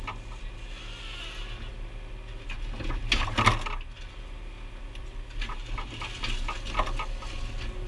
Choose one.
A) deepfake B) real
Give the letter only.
B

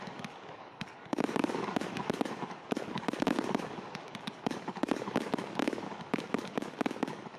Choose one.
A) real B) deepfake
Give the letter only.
B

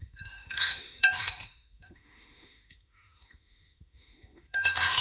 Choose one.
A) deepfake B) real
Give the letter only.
A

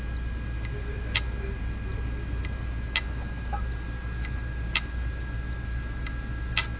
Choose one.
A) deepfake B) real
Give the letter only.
B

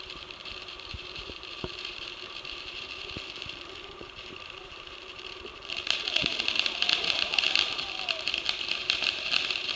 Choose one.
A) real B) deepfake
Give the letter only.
B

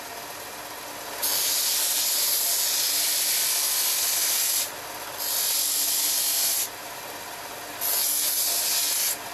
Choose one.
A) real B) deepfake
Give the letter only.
A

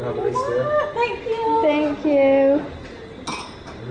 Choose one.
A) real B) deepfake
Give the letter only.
A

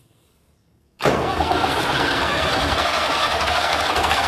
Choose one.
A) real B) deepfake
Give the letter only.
B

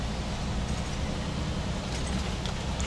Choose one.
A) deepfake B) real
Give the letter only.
B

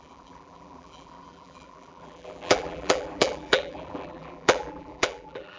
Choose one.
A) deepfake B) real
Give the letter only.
A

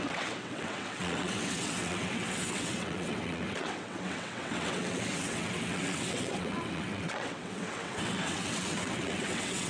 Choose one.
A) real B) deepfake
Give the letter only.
B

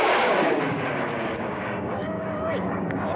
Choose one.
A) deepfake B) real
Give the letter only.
A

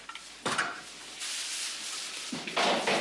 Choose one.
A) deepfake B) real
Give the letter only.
B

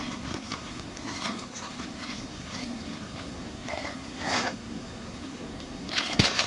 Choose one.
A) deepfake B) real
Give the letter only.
A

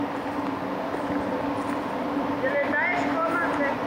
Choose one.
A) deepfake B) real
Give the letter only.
B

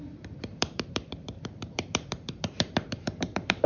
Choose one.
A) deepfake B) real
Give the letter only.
A